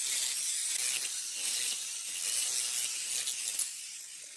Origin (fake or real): real